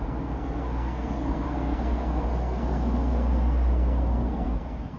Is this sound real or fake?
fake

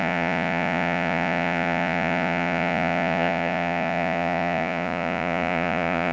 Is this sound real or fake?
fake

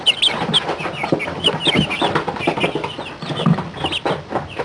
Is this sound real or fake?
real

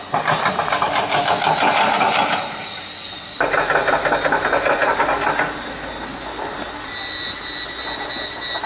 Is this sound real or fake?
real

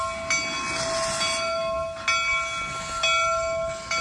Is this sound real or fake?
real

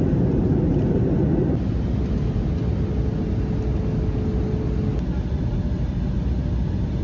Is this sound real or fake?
real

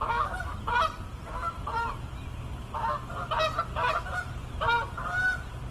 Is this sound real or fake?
fake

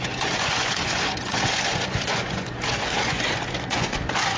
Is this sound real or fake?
fake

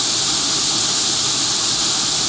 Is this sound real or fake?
real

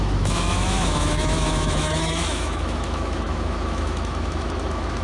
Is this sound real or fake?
fake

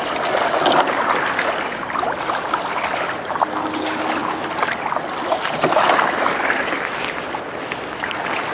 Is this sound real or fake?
real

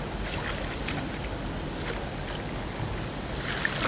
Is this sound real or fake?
real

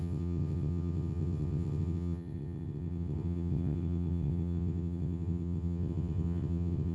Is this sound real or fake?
fake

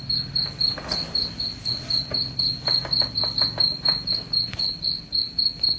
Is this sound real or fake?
real